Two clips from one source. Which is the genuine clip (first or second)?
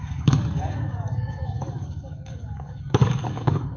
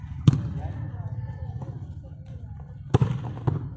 second